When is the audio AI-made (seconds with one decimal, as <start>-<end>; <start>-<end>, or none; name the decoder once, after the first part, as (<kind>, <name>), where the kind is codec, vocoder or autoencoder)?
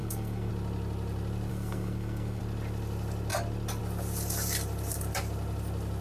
0.0-0.5 (codec, SNAC); 1.5-2.4